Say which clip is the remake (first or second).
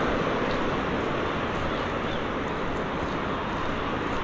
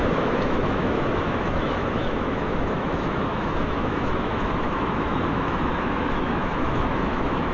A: second